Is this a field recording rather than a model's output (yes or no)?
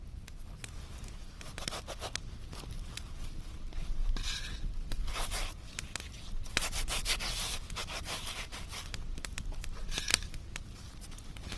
yes